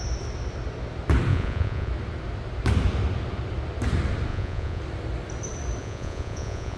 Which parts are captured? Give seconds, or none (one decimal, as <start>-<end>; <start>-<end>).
0.0-1.3; 1.9-4.3; 4.8-5.8